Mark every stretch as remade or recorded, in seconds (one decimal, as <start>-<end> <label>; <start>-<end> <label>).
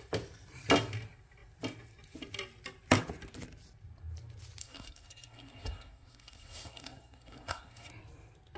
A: 0.0-4.6 recorded; 4.6-7.9 remade; 7.9-8.6 recorded